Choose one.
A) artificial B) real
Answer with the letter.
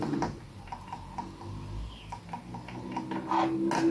B